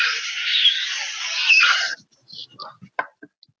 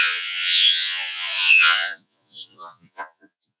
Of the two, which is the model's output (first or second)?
second